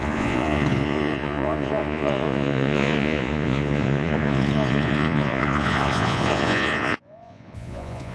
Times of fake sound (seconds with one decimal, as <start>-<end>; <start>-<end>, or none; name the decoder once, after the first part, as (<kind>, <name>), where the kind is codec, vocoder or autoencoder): 0.0-8.1 (vocoder, Vocos)